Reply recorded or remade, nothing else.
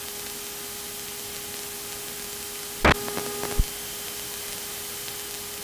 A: recorded